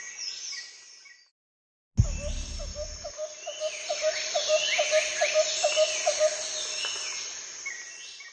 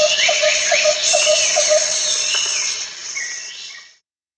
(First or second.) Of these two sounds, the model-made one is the second